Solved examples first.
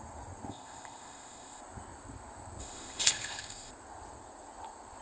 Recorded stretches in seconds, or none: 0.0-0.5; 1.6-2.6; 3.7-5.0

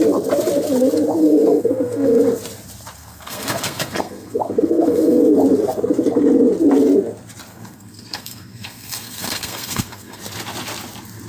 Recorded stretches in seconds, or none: 0.0-1.2; 2.2-3.0; 5.2-7.5; 10.2-11.3

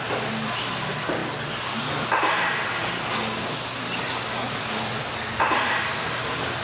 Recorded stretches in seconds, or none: 0.0-6.6

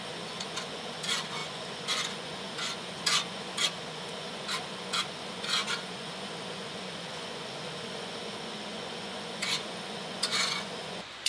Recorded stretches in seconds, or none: none

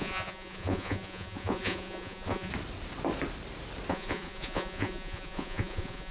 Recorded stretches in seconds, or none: 2.5-3.9